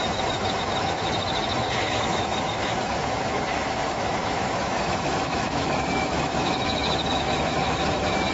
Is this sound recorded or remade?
remade